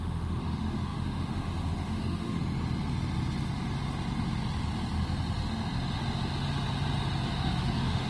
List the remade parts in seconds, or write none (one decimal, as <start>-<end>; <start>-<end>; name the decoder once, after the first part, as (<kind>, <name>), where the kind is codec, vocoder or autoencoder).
0.0-2.4 (autoencoder, DAC-VAE); 7.3-8.1